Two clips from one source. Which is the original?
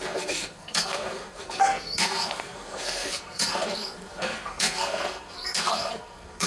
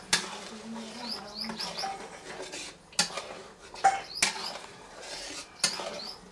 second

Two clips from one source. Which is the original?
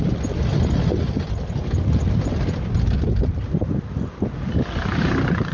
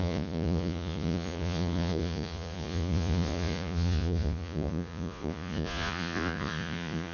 first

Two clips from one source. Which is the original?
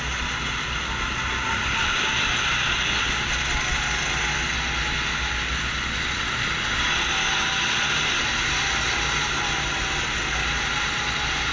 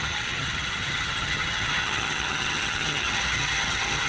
first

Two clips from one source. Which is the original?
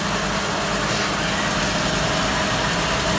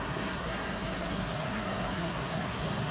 first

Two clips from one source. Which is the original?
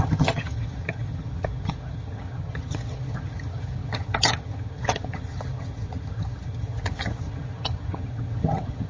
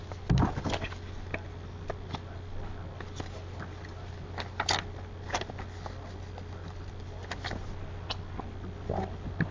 second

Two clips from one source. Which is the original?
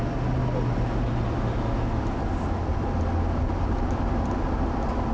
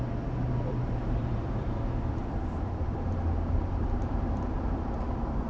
first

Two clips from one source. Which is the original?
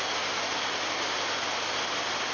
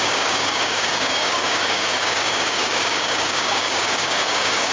first